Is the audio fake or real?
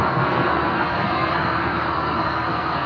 fake